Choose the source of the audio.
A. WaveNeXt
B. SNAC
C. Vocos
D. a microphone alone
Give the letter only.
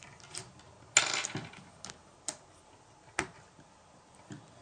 D